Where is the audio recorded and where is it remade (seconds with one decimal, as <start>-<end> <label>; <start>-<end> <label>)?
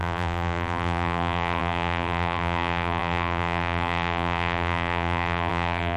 0.0-6.0 remade